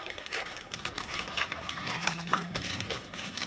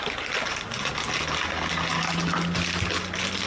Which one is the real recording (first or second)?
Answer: second